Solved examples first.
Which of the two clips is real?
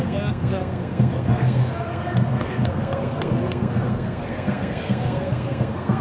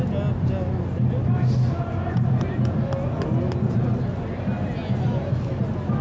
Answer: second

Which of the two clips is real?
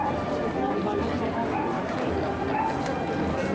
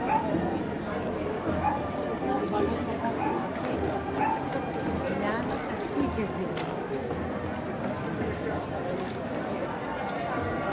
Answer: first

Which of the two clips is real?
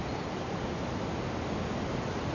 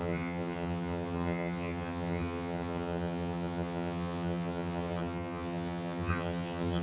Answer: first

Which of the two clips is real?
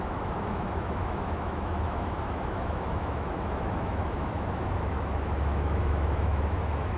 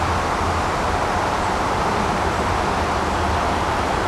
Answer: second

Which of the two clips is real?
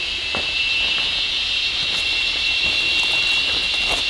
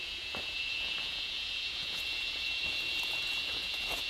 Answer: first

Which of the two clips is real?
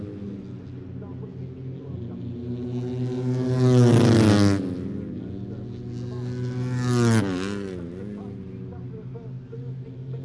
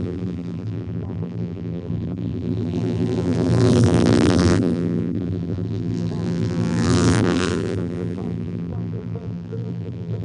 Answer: first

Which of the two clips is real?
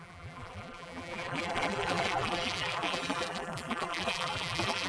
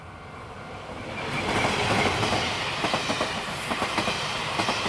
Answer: second